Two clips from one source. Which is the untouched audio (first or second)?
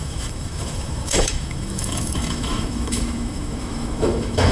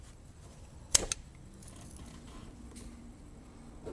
second